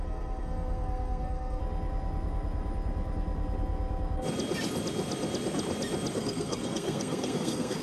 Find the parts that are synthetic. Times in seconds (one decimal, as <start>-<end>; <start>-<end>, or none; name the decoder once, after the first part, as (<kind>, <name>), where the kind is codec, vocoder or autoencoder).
0.0-1.6 (codec, SNAC); 6.1-7.8